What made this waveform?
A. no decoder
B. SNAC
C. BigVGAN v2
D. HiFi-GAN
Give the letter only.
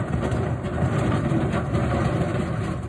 C